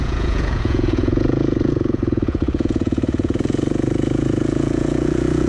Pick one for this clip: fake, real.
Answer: fake